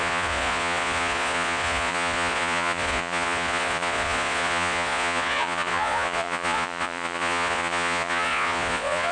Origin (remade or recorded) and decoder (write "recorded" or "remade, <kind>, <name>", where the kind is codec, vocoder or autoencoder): remade, vocoder, Vocos